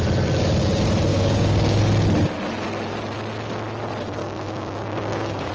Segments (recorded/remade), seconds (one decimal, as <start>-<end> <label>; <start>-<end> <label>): 0.0-1.1 recorded; 1.1-1.8 remade; 1.8-4.2 recorded; 4.2-5.5 remade